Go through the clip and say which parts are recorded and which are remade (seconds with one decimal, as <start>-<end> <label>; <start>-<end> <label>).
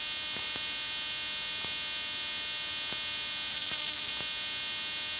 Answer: 0.0-3.5 recorded; 3.5-4.1 remade; 4.1-5.2 recorded